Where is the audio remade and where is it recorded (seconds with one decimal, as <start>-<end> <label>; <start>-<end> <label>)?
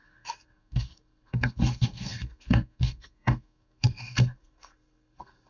0.0-5.5 remade